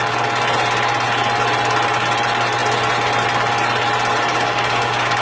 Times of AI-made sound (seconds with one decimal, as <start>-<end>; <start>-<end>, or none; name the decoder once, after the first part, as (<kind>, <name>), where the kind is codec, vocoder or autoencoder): 4.3-5.2 (codec, DAC)